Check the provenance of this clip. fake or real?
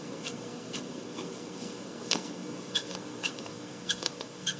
fake